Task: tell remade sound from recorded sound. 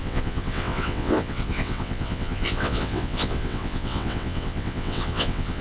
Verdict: remade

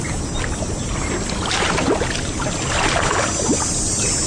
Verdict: recorded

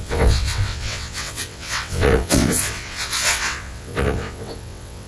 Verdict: remade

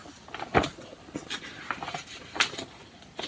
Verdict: recorded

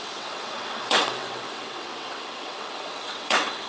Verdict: remade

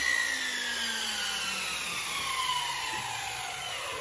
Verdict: recorded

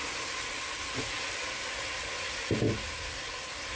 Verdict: recorded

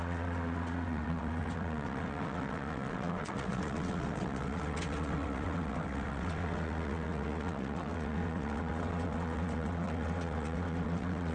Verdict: remade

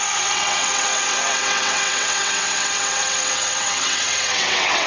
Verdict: remade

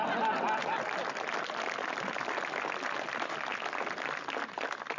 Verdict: recorded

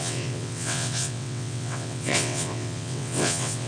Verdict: remade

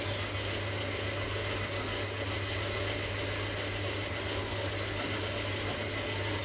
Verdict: recorded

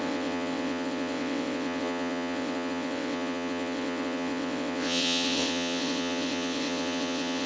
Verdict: remade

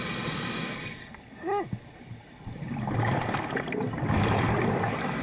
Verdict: recorded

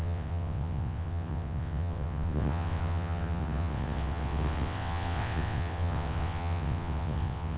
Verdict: remade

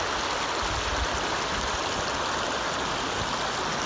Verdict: recorded